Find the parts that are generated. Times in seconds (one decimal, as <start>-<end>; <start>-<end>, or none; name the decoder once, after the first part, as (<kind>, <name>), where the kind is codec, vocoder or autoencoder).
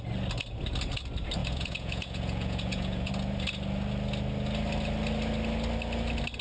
1.4-3.1 (vocoder, Vocos)